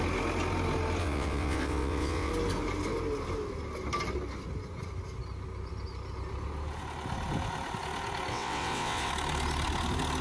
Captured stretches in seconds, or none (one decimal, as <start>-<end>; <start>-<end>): 0.0-1.0; 2.3-8.3; 9.1-10.2